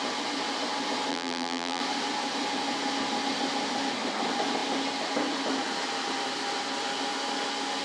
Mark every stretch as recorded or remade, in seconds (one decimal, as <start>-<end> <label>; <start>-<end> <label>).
0.0-1.1 recorded; 1.1-1.8 remade; 1.8-7.8 recorded